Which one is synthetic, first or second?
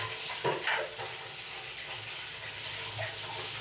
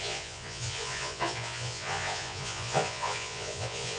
second